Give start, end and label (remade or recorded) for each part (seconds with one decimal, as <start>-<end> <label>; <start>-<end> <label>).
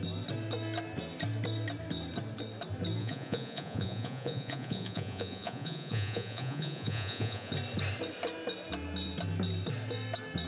0.0-3.0 recorded; 3.0-7.5 remade; 7.5-10.5 recorded